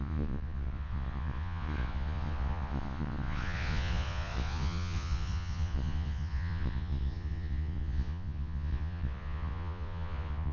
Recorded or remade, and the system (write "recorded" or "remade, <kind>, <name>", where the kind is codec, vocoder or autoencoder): remade, vocoder, Vocos